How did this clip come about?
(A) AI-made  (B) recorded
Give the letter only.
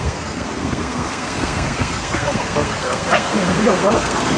A